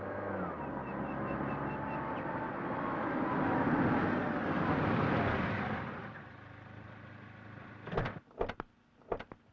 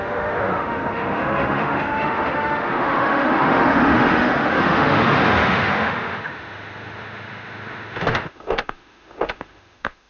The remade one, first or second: second